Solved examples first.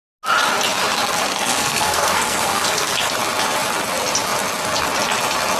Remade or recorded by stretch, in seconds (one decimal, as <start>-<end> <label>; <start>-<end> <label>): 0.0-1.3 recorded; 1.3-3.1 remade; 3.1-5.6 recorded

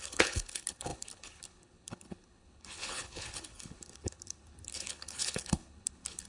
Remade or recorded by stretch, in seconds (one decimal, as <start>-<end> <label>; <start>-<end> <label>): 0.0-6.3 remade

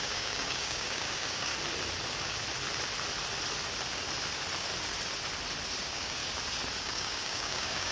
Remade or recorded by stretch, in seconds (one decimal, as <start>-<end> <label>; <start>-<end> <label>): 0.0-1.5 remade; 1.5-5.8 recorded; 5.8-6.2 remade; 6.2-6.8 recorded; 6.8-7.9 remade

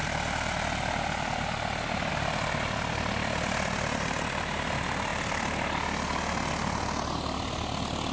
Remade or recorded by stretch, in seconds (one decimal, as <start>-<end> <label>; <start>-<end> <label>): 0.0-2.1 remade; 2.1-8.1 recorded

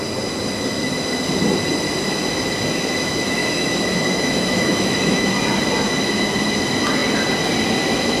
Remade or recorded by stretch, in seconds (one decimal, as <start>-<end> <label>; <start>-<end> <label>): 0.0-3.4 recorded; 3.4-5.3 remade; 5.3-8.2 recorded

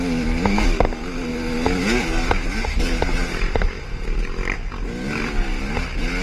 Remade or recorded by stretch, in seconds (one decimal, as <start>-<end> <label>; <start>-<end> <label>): 0.0-6.2 recorded

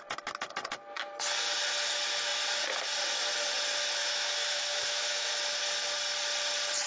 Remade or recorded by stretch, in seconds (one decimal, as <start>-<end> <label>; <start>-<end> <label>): 0.0-4.0 recorded; 4.0-5.3 remade; 5.3-6.9 recorded